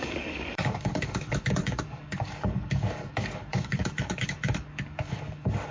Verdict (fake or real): fake